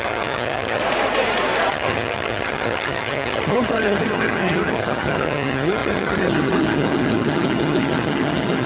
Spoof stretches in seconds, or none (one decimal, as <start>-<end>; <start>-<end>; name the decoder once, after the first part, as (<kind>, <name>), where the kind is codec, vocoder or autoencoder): 0.0-0.8 (vocoder, HiFi-GAN); 1.7-8.7